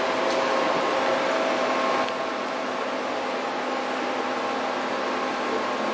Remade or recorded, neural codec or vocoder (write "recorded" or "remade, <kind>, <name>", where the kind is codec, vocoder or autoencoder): recorded